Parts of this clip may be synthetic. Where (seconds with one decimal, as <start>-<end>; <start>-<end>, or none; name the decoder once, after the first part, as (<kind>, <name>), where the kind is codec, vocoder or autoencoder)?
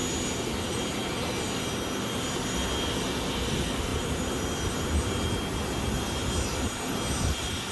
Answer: none